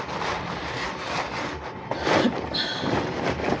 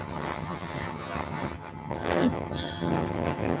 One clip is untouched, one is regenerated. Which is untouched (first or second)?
first